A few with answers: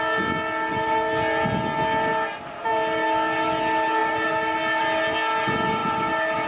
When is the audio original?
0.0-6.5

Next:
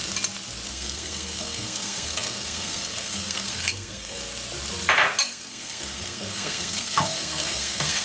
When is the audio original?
0.0-0.7; 4.2-5.2

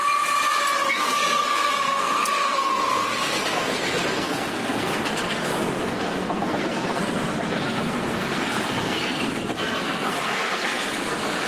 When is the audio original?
0.0-0.9

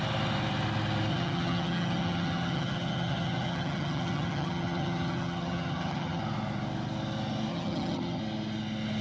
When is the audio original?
0.0-1.1; 6.2-7.5; 8.2-9.0

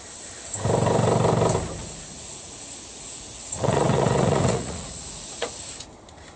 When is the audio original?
0.0-1.8; 5.6-6.4